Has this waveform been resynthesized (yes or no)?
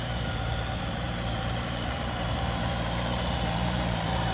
yes